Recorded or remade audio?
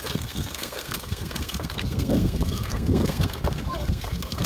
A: remade